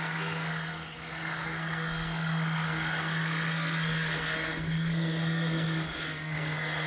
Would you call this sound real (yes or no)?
no